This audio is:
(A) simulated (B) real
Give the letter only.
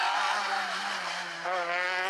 B